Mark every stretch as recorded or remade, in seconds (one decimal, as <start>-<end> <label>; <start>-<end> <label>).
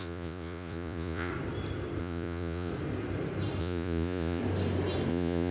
0.0-1.3 remade; 1.3-2.0 recorded; 2.0-2.7 remade; 2.7-3.6 recorded; 3.6-4.4 remade; 4.4-5.1 recorded; 5.1-5.5 remade